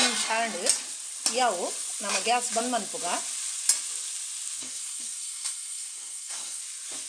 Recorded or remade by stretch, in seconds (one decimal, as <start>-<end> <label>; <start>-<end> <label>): 0.0-4.6 recorded; 4.6-6.6 remade; 6.6-7.1 recorded